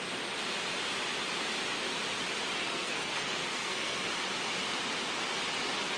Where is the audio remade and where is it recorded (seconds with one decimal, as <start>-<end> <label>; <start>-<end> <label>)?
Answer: 0.0-2.6 recorded; 2.6-4.0 remade; 4.0-6.0 recorded